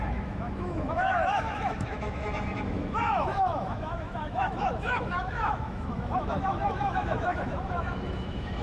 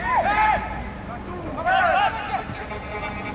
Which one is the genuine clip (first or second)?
second